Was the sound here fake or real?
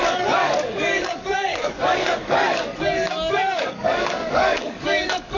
fake